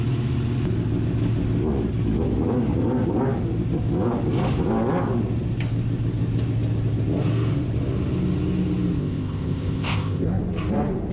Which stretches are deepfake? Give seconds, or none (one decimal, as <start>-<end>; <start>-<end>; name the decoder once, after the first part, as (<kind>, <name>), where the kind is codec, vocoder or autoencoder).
9.0-10.4 (codec, ZipCodec)